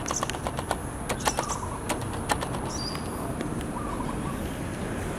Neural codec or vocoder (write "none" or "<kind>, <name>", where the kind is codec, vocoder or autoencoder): none